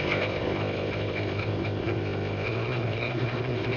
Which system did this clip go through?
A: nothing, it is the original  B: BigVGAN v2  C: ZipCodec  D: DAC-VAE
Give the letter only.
C